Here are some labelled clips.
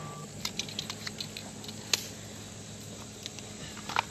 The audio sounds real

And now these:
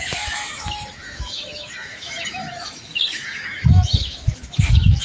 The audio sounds fake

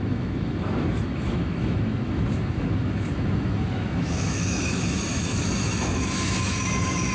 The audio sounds fake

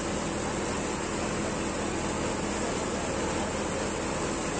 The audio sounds real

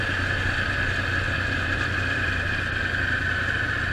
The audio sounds real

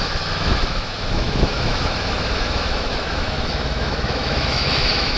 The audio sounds fake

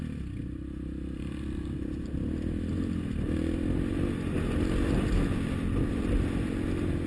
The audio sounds real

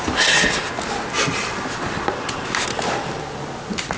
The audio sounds real